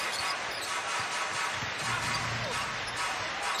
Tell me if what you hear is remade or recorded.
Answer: recorded